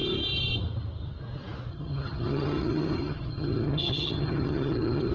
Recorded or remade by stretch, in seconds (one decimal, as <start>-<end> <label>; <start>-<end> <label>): 0.0-1.7 recorded; 1.7-5.1 remade